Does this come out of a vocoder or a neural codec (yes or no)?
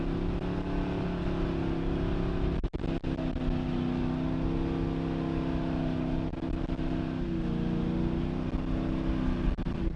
no